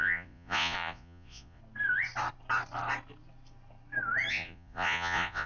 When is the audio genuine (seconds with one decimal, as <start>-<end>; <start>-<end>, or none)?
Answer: 1.6-4.3